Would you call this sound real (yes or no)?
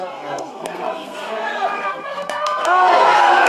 no